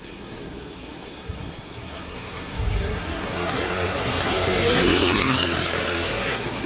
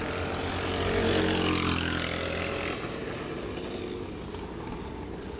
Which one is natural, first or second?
second